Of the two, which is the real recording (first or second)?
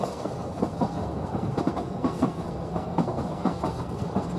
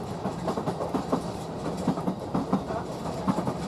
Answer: second